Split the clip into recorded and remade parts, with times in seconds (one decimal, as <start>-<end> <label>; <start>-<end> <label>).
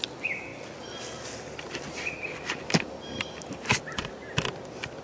0.0-5.0 recorded